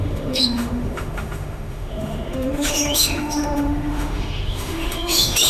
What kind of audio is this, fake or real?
fake